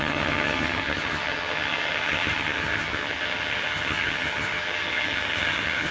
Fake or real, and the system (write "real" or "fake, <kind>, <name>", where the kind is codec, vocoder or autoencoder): fake, vocoder, HiFi-GAN